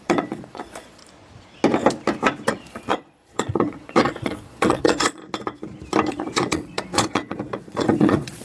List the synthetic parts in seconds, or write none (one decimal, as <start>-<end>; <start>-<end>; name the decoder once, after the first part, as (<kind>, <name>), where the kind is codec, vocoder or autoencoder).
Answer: 0.0-1.0 (vocoder, Vocos); 2.5-5.2; 6.1-8.4

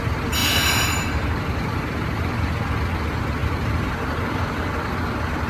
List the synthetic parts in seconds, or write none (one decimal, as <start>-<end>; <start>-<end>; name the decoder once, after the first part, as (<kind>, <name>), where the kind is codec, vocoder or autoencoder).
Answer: 0.4-2.6 (vocoder, BigVGAN v2); 3.4-4.7

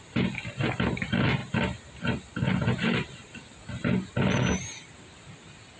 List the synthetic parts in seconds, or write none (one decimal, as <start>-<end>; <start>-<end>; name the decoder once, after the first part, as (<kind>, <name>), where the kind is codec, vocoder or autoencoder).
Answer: none

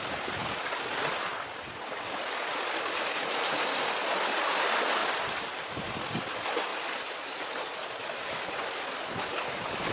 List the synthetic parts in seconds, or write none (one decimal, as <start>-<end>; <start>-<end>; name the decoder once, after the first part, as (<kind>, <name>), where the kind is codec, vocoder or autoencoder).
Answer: 6.7-8.6 (vocoder, BigVGAN v2)